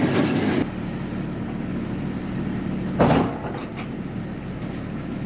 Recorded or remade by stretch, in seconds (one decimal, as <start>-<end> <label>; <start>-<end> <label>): 0.0-5.3 recorded